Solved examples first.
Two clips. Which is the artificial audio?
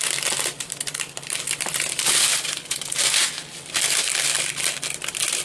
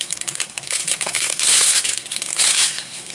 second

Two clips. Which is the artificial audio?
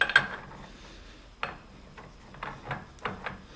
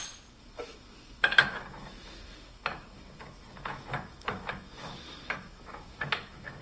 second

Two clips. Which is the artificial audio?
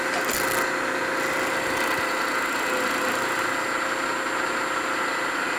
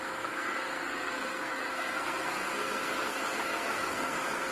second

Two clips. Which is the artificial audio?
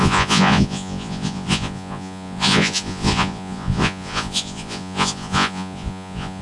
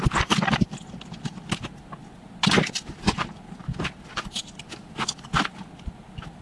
first